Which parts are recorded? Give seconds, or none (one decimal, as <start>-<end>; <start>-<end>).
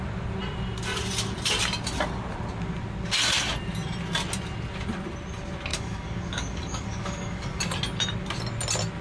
0.0-5.7; 7.6-9.0